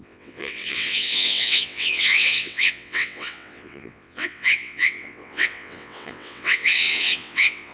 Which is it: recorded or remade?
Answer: remade